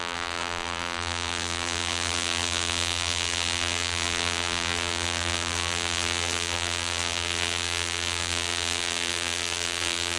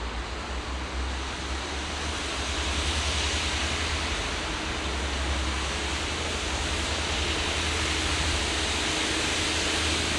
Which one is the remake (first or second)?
first